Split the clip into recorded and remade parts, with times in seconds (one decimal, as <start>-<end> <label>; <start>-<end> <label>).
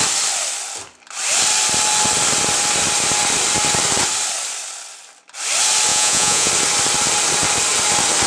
0.0-5.9 recorded; 5.9-6.5 remade; 6.5-8.3 recorded